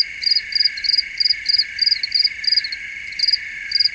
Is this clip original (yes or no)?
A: yes